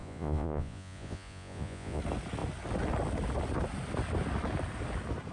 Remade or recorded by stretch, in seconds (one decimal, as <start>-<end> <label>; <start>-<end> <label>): 0.0-2.0 remade; 2.0-5.3 recorded